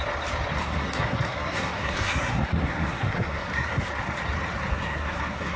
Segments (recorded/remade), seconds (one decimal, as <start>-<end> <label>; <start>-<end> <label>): 0.0-0.6 recorded; 0.6-3.9 remade; 3.9-4.7 recorded; 4.7-5.6 remade